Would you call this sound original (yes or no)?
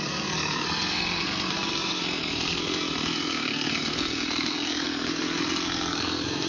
no